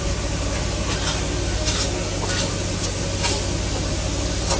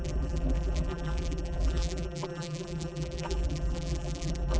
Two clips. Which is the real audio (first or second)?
first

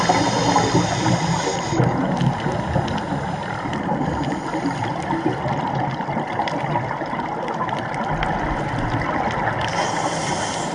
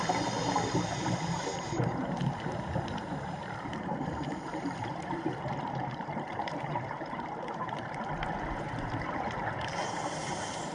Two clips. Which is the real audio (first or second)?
first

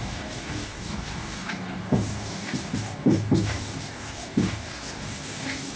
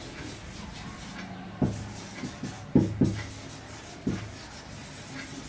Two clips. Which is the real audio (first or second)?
second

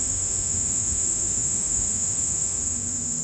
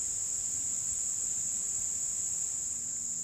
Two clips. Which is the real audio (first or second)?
second